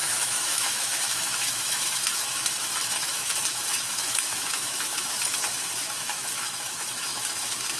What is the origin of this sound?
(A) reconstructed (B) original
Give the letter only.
A